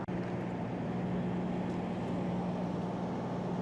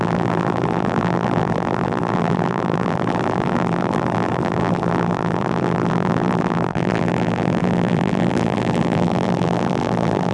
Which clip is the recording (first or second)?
first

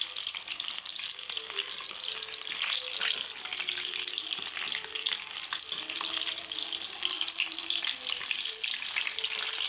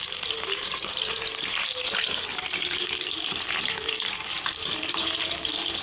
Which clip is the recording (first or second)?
first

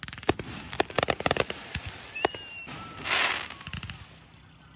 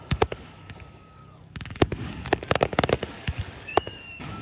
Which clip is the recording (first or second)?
first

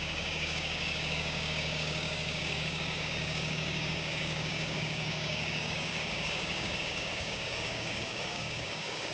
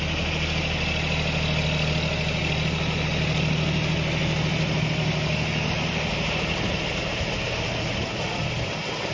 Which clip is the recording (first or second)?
second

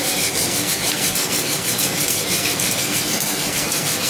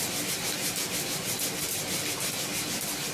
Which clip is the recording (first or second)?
second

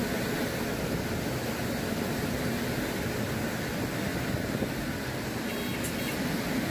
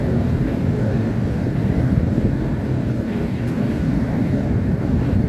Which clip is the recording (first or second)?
first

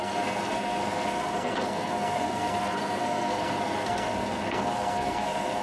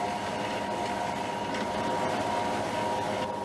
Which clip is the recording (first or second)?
second